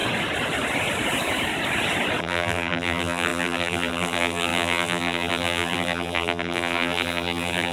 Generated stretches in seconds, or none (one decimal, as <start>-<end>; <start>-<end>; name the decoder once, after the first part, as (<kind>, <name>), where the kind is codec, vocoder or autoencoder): 2.2-7.7 (vocoder, BigVGAN v2)